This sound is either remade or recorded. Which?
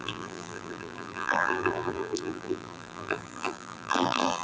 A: remade